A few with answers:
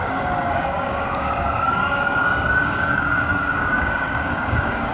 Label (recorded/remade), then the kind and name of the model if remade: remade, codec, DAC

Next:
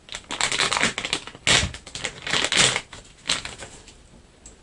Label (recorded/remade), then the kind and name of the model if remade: recorded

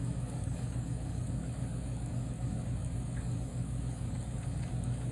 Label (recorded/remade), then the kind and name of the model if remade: remade, codec, DAC